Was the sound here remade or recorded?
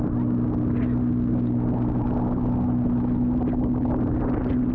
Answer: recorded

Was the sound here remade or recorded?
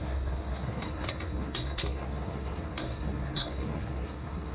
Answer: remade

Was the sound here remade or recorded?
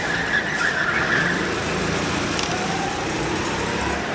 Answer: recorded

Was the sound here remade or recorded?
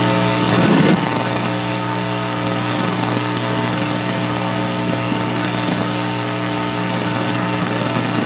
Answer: remade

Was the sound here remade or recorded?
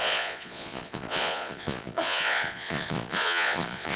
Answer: remade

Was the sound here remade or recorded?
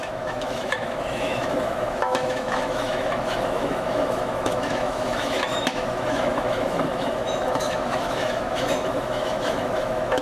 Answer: remade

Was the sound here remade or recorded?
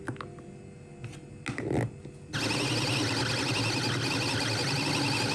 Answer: recorded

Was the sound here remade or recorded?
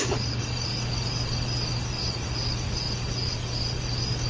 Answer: recorded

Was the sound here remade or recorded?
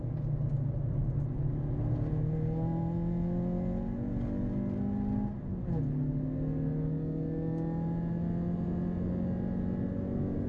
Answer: recorded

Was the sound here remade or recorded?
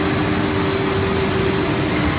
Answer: recorded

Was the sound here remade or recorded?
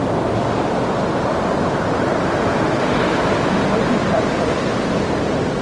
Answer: recorded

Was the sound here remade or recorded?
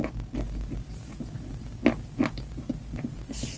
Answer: recorded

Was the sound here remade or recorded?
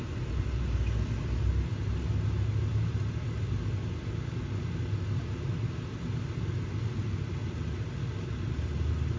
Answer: recorded